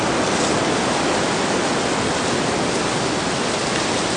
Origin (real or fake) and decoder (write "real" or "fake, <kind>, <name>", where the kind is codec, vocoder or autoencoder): real